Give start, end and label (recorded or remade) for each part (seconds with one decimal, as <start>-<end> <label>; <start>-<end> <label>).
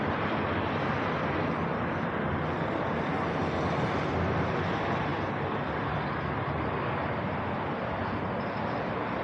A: 0.0-9.2 recorded